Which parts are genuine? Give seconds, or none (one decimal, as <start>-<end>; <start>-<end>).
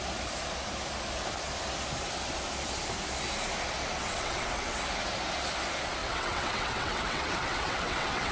0.0-4.0; 4.8-6.0